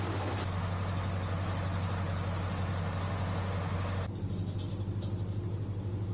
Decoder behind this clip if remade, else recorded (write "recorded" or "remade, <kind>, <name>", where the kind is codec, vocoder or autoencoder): recorded